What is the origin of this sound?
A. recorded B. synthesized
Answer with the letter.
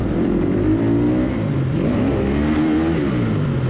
A